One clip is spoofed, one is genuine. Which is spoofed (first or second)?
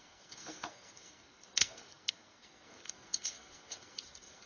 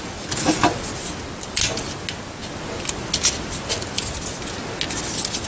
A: first